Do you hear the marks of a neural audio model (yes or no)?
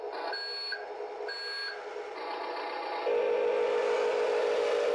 no